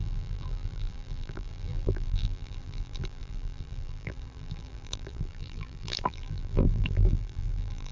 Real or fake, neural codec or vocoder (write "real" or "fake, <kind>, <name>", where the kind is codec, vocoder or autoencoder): fake, vocoder, BigVGAN v2